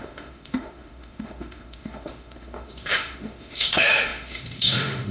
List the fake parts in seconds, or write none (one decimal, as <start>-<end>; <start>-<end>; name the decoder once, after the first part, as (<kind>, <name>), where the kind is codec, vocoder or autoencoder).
0.0-5.1 (autoencoder, DAC-VAE)